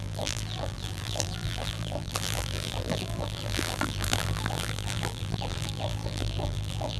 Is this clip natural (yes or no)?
no